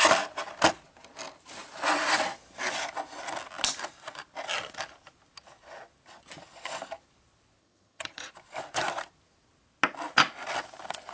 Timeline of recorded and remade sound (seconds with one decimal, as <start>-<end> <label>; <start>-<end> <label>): 0.0-7.6 recorded; 7.6-8.3 remade; 8.3-11.1 recorded